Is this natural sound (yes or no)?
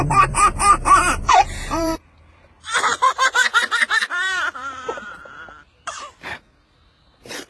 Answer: no